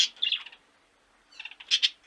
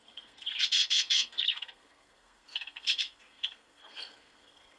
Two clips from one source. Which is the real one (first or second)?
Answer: first